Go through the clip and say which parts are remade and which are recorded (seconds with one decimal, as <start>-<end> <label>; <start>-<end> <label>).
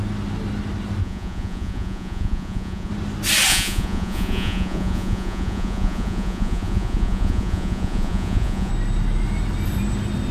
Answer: 0.0-1.0 recorded; 1.0-2.9 remade; 2.9-3.5 recorded; 3.5-8.7 remade; 8.7-10.3 recorded